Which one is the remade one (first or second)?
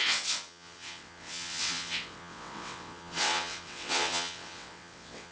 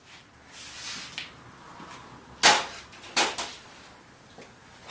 first